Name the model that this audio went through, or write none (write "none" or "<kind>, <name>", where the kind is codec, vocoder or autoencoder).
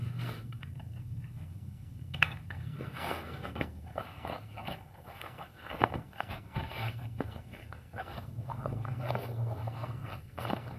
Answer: codec, SNAC